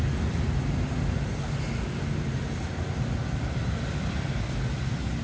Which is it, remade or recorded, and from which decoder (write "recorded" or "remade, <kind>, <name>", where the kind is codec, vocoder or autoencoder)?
recorded